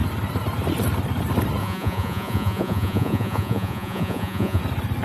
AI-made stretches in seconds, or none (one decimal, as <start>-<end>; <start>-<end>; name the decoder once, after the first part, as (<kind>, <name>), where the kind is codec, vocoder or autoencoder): 1.6-4.6 (vocoder, Vocos)